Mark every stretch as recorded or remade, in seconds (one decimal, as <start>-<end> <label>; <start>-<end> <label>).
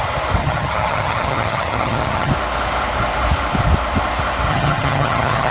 0.0-0.4 recorded; 0.4-2.3 remade; 2.3-4.5 recorded; 4.5-5.5 remade